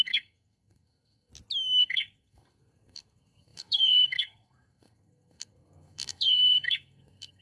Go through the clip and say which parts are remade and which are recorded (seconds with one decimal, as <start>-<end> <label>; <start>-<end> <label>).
0.0-1.3 remade; 1.3-1.8 recorded; 1.8-7.4 remade